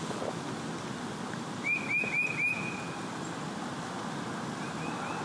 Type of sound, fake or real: real